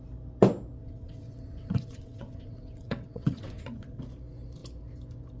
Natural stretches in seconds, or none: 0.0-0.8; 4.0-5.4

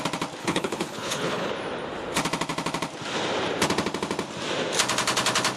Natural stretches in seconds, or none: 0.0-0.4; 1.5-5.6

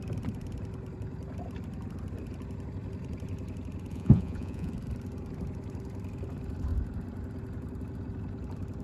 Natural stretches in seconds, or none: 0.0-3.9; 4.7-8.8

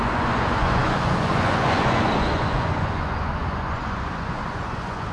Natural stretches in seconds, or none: none